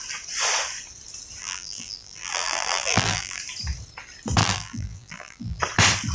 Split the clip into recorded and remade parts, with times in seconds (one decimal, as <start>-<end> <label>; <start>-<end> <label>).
0.0-1.4 recorded; 1.4-3.4 remade; 3.4-4.4 recorded; 4.4-5.6 remade; 5.6-6.1 recorded